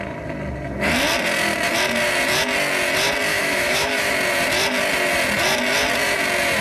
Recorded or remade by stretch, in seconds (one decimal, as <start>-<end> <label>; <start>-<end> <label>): 0.0-3.3 recorded; 3.3-4.1 remade; 4.1-6.6 recorded